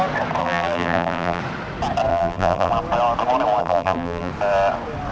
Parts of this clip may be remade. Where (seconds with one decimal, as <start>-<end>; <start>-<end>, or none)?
0.4-1.4; 2.1-2.7; 3.6-4.3